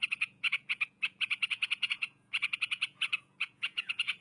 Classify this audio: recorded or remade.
remade